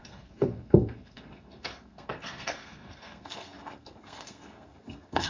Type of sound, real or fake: fake